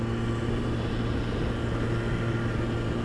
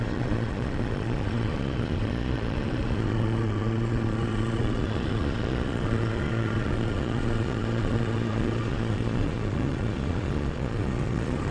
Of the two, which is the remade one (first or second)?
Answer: second